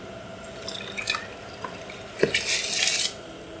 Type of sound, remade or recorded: recorded